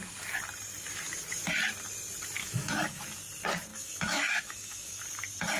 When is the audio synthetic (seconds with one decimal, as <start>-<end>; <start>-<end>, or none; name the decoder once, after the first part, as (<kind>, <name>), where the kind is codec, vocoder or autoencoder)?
2.4-3.0 (autoencoder, DAC-VAE); 3.7-5.0